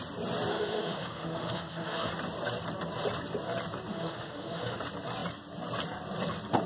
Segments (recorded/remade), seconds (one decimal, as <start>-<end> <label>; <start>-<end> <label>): 0.0-0.5 recorded; 0.5-2.1 remade; 2.1-3.9 recorded; 3.9-4.8 remade; 4.8-6.7 recorded